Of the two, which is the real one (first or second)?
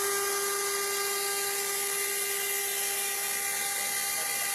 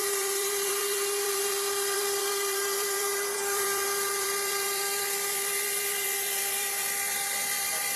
first